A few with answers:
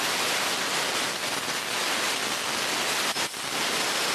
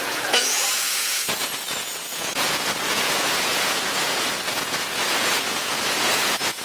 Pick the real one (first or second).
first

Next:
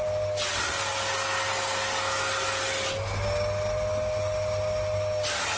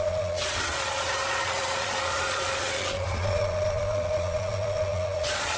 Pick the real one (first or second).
first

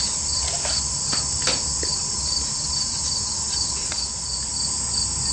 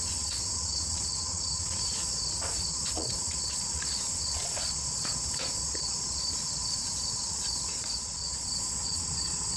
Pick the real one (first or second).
first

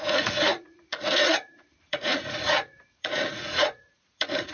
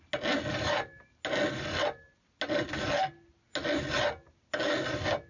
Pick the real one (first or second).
second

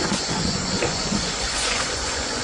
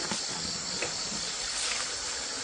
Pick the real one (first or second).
second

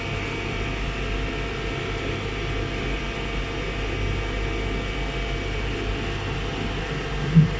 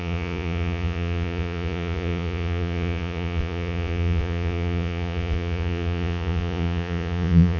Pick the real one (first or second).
first